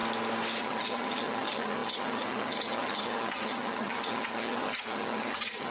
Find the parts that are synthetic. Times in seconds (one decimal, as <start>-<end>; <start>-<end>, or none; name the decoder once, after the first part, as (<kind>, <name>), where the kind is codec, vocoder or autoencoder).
0.6-5.7 (vocoder, HiFi-GAN)